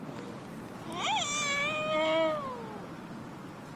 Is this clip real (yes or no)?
yes